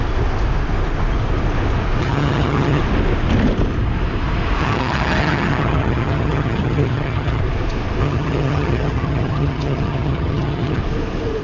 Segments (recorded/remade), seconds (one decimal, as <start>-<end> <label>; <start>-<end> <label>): 0.0-2.0 recorded; 2.0-2.8 remade; 2.8-4.6 recorded; 4.6-7.4 remade; 7.4-8.0 recorded; 8.0-10.8 remade; 10.8-11.4 recorded